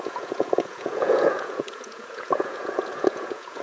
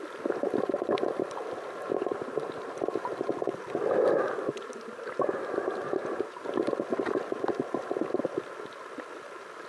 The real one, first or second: second